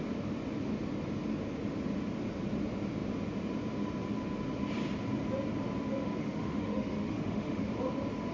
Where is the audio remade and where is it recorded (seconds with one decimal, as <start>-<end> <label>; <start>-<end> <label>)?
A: 0.0-6.2 recorded; 6.2-7.7 remade; 7.7-8.3 recorded